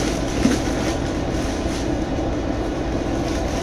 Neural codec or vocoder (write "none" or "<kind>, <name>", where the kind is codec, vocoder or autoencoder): none